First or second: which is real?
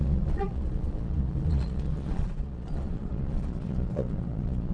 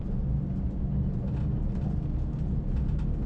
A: second